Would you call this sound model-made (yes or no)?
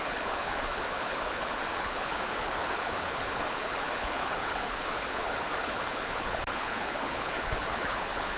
yes